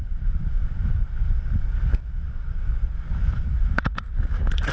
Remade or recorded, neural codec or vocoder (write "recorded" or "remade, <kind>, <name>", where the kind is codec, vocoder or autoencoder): recorded